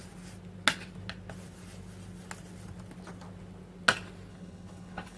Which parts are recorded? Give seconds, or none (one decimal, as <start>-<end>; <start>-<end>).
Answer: 0.0-4.3